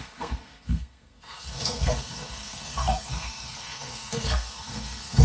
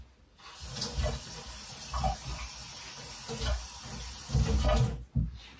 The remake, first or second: first